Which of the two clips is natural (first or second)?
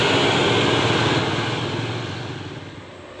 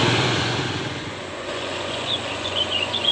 first